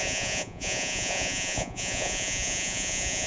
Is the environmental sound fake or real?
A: fake